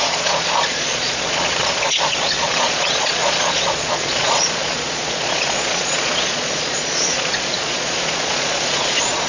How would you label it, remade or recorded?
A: remade